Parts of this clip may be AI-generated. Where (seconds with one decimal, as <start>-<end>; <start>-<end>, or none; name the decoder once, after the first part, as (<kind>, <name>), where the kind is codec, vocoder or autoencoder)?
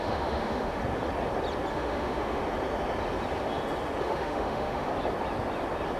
0.0-0.8 (autoencoder, DAC-VAE); 1.7-2.4; 4.0-4.9